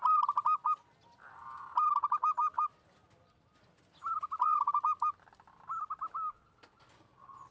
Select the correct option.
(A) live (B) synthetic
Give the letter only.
A